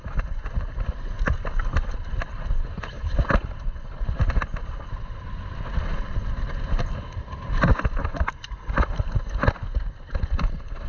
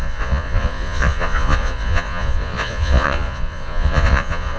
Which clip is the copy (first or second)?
second